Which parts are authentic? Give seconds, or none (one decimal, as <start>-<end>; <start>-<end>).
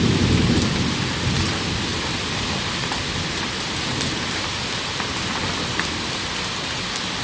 0.0-7.2